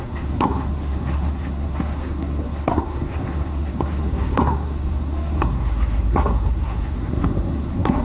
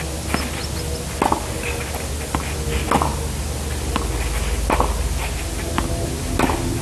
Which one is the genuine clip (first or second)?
second